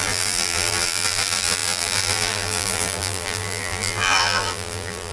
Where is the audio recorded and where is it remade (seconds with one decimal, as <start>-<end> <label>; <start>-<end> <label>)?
0.0-5.1 remade